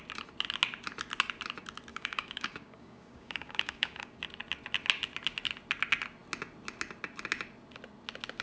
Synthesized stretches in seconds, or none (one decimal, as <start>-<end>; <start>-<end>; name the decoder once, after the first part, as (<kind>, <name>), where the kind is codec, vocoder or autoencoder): 1.9-4.2 (codec, DAC)